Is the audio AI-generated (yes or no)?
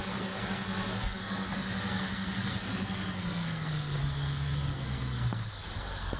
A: yes